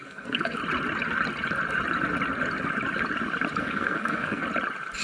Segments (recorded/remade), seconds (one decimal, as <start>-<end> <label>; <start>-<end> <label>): 0.0-0.6 remade; 0.6-3.6 recorded; 3.6-4.4 remade; 4.4-5.0 recorded